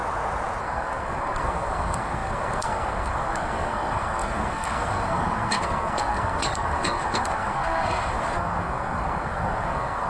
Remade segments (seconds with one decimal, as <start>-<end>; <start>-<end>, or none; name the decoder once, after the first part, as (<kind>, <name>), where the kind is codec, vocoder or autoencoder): 0.6-10.1 (codec, SNAC)